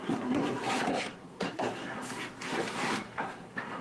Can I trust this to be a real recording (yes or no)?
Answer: no